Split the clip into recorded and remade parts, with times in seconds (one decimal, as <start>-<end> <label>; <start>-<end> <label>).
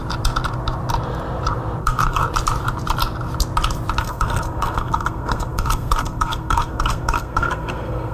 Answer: 0.0-1.8 recorded; 1.8-2.2 remade; 2.2-4.0 recorded; 4.0-8.1 remade